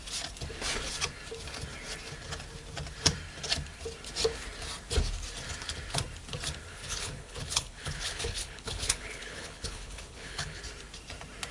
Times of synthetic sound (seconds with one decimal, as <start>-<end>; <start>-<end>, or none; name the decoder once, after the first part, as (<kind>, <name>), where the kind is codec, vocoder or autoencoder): 6.7-10.6 (codec, HILCodec)